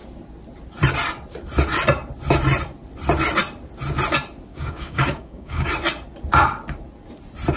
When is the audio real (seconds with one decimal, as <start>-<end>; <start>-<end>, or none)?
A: 0.0-4.5; 5.7-7.6